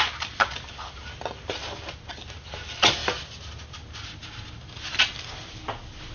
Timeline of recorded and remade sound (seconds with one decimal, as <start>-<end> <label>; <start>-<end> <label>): 0.0-6.1 recorded